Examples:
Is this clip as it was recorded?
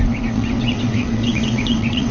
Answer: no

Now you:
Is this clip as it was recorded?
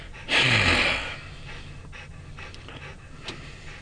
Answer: yes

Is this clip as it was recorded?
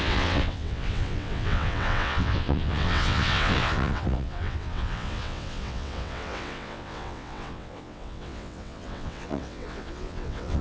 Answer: no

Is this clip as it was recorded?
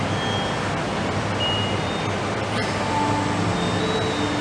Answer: yes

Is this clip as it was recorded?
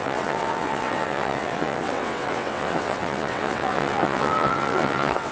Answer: no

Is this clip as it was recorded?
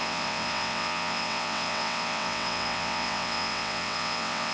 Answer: no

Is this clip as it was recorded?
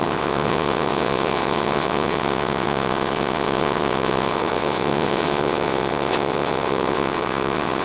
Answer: no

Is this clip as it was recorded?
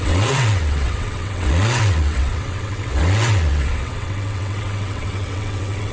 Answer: no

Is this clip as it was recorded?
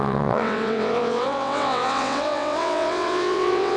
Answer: no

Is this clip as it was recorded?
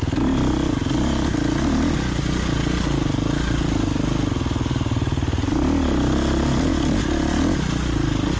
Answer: yes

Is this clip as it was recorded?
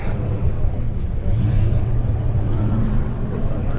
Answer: no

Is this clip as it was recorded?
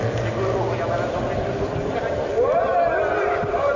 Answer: yes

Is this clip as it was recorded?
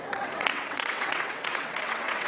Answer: no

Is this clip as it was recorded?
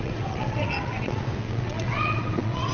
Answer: no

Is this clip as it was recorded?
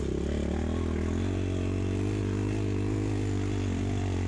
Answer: yes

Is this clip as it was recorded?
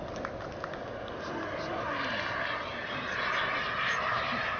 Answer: yes